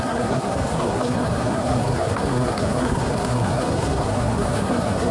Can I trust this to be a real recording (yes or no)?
no